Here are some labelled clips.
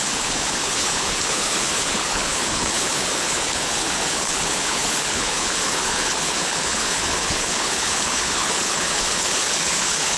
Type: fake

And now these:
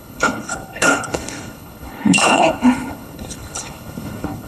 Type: fake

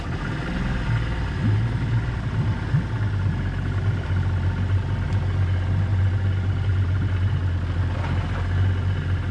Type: real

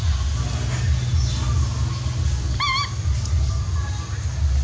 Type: real